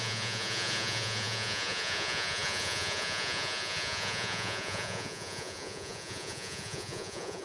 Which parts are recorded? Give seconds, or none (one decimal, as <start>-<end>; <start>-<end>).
none